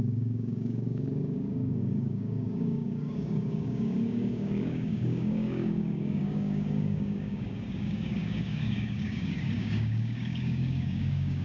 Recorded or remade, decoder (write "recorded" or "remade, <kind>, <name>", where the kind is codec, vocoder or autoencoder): remade, codec, DAC